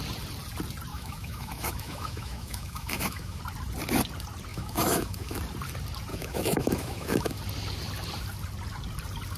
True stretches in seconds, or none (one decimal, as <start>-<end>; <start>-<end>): 0.0-0.9; 3.4-4.5; 5.4-6.1; 7.4-9.4